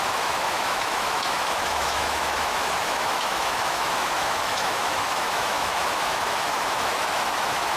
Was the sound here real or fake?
fake